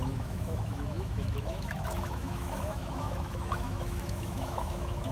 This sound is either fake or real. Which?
fake